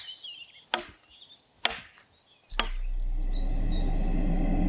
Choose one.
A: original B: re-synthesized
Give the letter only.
A